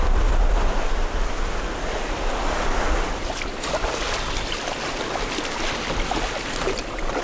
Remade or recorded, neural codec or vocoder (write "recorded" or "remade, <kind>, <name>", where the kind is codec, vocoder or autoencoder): recorded